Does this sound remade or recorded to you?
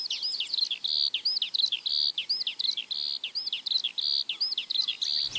recorded